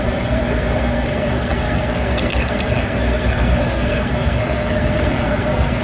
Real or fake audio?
fake